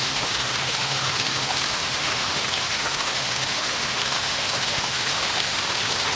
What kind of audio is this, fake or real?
fake